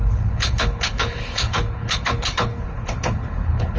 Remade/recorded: remade